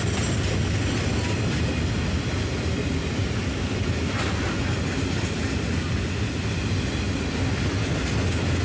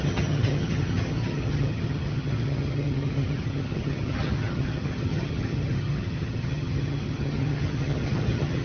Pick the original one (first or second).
first